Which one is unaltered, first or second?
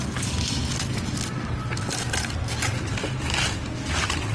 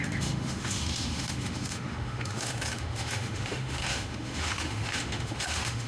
first